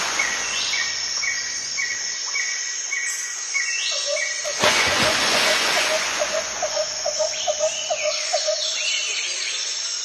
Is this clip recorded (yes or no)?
no